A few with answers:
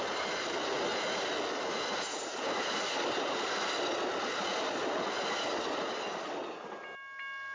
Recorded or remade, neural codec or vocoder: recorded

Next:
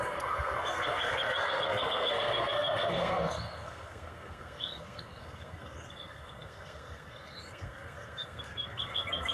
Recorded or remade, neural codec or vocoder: remade, codec, SNAC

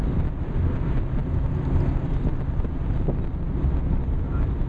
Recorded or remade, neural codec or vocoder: recorded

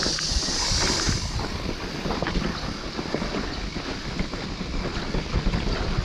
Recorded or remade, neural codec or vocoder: recorded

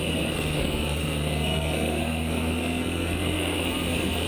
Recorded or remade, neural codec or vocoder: remade, codec, SNAC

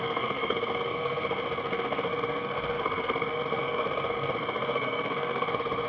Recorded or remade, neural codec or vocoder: remade, codec, SNAC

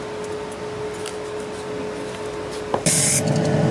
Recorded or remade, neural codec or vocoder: recorded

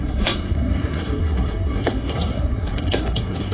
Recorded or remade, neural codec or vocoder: remade, codec, SNAC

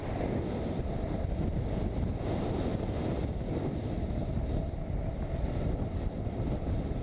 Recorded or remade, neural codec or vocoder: recorded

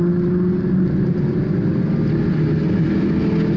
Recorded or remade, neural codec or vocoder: recorded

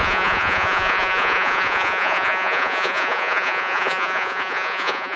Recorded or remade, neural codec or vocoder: remade, vocoder, Vocos